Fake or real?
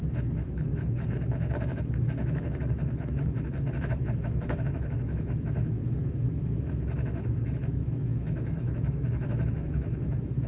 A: fake